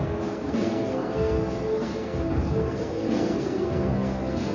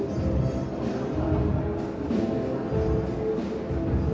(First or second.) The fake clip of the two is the first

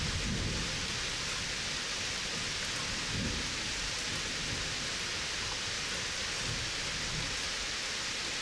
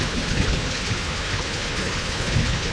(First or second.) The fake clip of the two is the second